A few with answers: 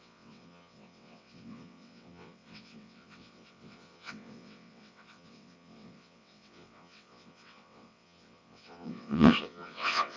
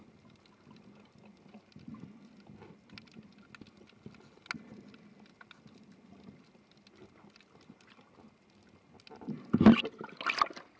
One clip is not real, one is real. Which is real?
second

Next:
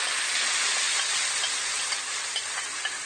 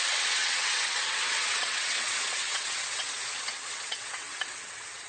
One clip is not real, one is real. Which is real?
first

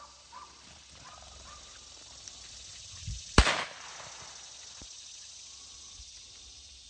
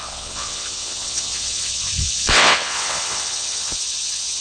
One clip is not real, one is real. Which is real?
first